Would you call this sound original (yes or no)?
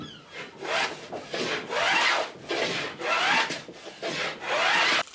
yes